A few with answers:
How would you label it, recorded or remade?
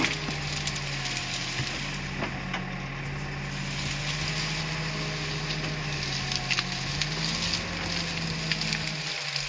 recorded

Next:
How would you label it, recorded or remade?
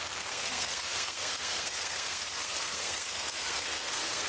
remade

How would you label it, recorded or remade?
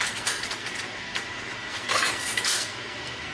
remade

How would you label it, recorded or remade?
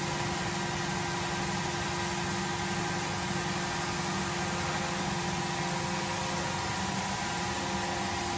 recorded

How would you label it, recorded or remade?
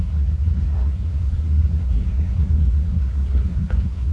remade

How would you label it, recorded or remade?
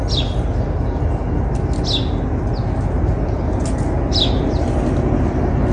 recorded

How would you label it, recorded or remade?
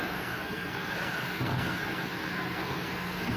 remade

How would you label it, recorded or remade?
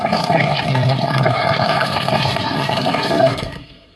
remade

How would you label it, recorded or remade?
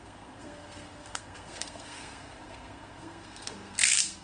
remade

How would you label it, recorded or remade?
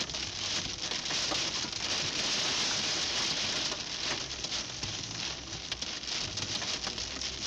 recorded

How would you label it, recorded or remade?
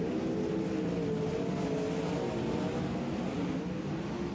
recorded